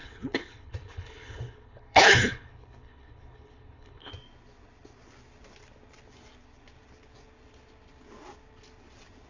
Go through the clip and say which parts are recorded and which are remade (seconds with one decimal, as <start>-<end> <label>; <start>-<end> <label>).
0.0-4.1 remade; 4.1-9.3 recorded